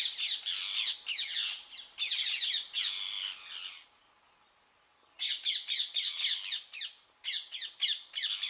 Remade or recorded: recorded